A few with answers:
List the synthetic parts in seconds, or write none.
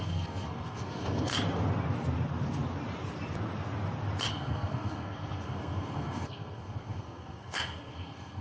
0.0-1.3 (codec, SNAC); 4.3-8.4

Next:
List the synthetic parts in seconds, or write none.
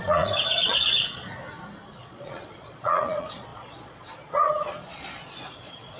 0.0-1.2 (vocoder, Vocos); 2.0-6.0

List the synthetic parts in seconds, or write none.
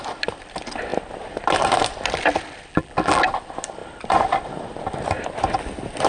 2.7-3.2 (vocoder, BigVGAN v2)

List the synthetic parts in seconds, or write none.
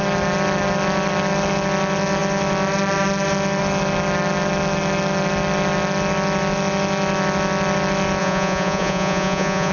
8.2-9.7 (vocoder, Vocos)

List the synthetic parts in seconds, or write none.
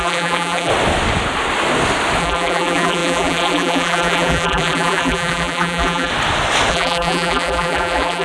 0.0-0.7 (vocoder, BigVGAN v2); 2.2-6.1; 6.7-8.2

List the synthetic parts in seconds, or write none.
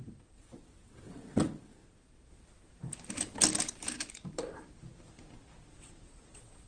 0.0-1.8 (vocoder, WaveNeXt); 5.8-6.7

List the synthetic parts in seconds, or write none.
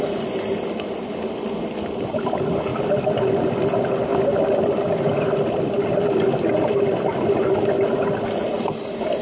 none